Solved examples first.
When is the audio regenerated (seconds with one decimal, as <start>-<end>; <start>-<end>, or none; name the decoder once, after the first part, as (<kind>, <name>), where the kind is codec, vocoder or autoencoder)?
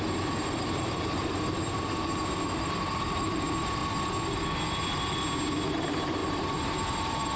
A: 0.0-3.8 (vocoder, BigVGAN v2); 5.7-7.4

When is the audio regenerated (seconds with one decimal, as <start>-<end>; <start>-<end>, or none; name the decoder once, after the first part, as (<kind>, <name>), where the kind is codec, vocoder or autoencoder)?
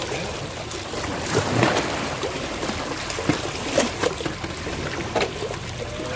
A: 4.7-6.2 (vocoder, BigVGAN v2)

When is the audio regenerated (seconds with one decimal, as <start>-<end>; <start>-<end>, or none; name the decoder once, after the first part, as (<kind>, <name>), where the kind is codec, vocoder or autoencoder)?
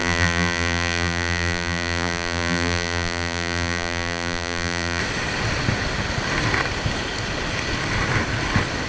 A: 0.0-5.0 (vocoder, BigVGAN v2)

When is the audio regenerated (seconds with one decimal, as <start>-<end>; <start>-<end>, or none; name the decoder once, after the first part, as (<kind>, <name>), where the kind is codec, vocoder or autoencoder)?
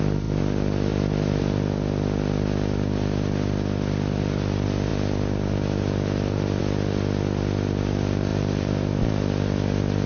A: 8.3-9.0 (vocoder, BigVGAN v2)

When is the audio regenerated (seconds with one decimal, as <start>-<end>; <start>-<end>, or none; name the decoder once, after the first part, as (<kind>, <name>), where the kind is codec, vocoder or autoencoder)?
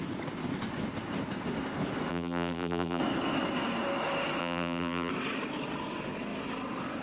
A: 2.1-3.0 (vocoder, BigVGAN v2); 4.4-5.1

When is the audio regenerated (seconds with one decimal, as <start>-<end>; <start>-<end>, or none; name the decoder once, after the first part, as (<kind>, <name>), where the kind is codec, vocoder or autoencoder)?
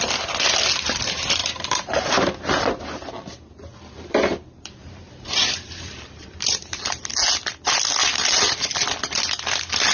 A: 1.4-2.1 (vocoder, BigVGAN v2); 3.7-7.0; 8.0-8.7